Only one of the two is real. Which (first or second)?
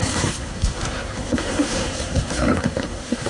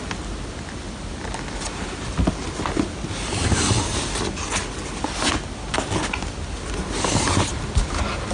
second